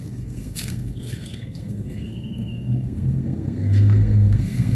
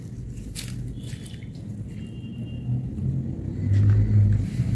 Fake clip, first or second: first